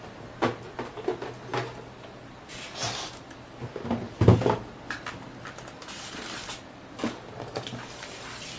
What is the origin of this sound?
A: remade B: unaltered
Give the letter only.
B